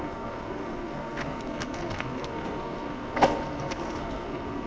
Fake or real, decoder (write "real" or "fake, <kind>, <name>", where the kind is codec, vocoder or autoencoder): fake, codec, SNAC